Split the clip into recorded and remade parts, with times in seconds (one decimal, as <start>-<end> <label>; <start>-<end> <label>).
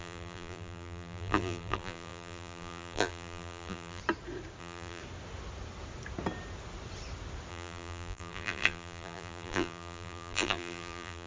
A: 0.0-4.0 remade; 4.0-4.6 recorded; 4.6-5.0 remade; 5.0-7.5 recorded; 7.5-11.3 remade